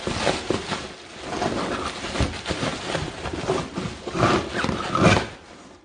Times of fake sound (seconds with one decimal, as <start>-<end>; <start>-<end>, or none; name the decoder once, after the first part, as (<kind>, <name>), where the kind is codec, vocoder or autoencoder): none